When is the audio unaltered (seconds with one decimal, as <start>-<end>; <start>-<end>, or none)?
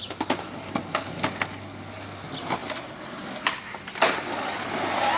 0.0-5.2